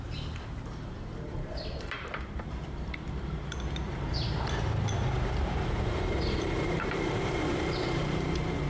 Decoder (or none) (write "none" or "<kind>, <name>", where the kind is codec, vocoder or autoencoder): vocoder, BigVGAN v2